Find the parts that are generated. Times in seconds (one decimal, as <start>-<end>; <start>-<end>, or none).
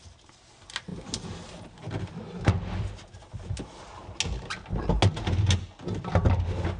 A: none